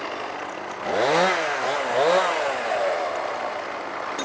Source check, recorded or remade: recorded